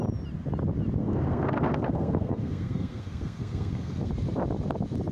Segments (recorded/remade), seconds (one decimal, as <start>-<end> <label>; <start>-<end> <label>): 0.0-1.0 recorded; 1.0-4.1 remade; 4.1-5.1 recorded

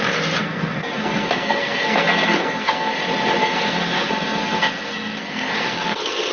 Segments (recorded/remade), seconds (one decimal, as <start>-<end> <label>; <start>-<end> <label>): 0.0-0.4 recorded; 0.4-2.9 remade; 2.9-3.4 recorded; 3.4-6.3 remade

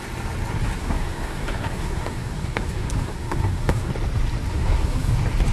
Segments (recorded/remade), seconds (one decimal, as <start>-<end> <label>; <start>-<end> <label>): 0.0-0.8 recorded; 0.8-3.9 remade; 3.9-4.5 recorded; 4.5-5.1 remade; 5.1-5.5 recorded